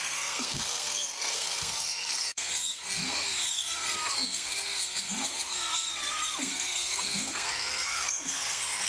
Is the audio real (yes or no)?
no